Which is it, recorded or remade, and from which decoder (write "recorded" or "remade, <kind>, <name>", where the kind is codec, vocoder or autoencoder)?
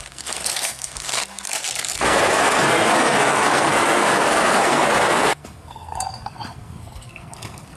remade, codec, SNAC